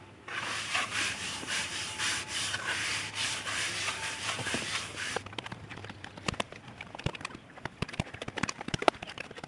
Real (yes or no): no